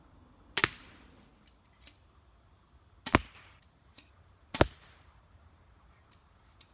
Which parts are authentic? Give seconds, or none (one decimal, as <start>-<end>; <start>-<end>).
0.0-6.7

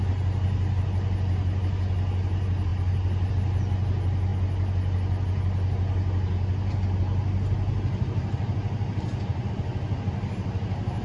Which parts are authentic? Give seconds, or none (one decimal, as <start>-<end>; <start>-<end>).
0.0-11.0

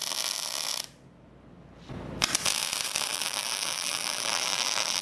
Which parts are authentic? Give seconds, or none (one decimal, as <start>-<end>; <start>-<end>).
0.0-3.1

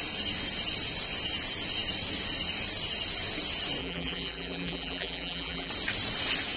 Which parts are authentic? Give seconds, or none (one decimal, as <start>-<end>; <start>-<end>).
0.0-3.8; 5.7-6.6